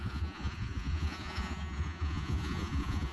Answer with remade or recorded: remade